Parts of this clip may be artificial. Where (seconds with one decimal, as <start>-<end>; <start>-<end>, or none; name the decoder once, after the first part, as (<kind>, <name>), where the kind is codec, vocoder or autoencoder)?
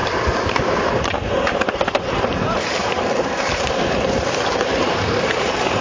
0.0-5.8 (vocoder, BigVGAN v2)